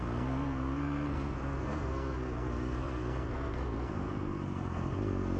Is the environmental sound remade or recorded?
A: remade